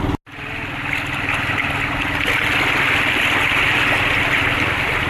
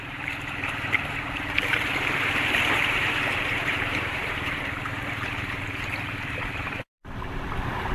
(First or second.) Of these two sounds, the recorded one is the first